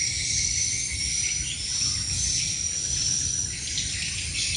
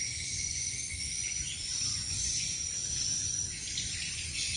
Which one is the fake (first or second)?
second